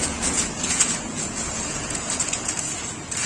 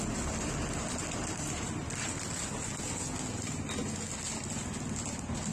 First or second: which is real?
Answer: second